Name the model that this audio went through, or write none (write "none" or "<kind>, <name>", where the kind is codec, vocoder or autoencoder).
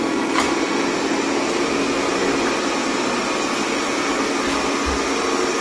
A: none